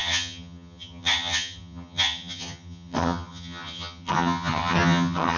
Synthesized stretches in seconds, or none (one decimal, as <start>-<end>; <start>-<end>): 0.0-5.4